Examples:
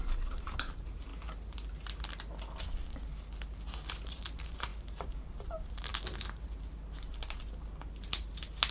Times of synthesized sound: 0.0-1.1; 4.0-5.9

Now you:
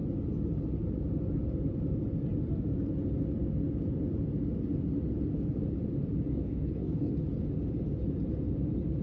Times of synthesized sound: 6.3-7.1

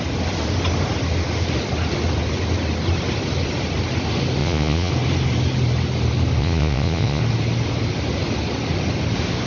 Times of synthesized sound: 4.4-4.9; 6.4-7.2

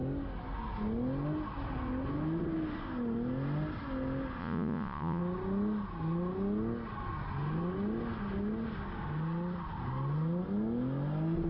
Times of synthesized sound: 4.4-5.2

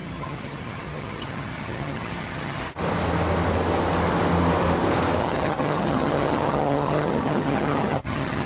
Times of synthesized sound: 0.0-2.6; 5.2-8.5